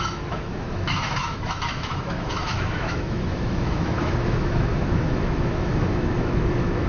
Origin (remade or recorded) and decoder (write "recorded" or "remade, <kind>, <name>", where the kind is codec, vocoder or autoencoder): remade, autoencoder, DAC-VAE